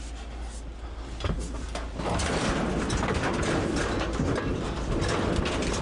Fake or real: real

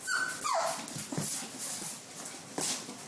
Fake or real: real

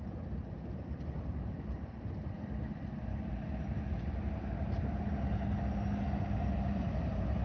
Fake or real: real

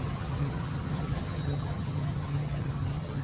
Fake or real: fake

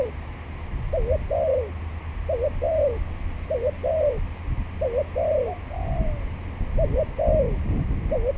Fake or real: real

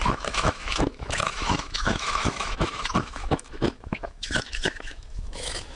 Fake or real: fake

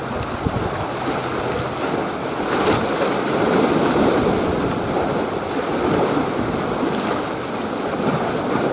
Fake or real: real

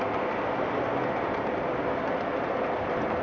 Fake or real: real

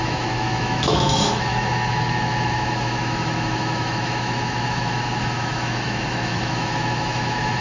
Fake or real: fake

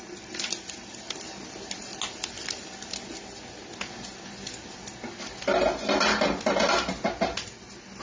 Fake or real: real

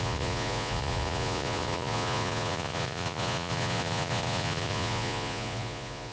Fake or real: fake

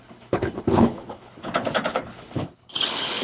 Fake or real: fake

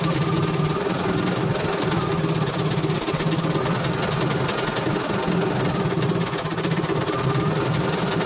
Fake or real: real